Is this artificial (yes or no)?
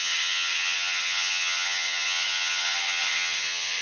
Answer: yes